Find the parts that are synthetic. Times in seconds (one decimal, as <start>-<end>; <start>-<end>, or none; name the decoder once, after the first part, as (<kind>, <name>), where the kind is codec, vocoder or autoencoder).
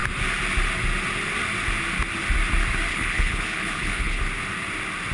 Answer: 2.9-4.2 (codec, HILCodec)